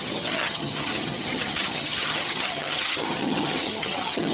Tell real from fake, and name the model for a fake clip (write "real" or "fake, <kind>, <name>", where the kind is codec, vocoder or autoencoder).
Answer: fake, vocoder, HiFi-GAN